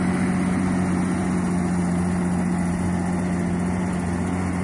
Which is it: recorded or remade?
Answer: recorded